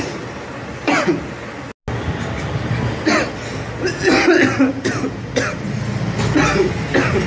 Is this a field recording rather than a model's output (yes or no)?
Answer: yes